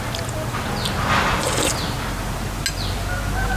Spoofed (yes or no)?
no